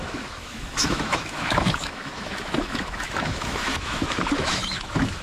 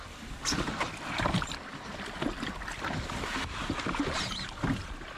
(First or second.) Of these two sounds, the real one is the second